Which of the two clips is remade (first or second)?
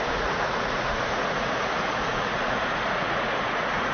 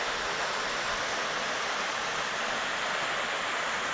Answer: first